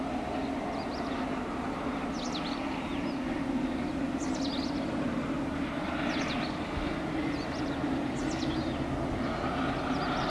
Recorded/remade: recorded